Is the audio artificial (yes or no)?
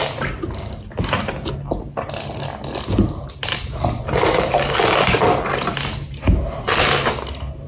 no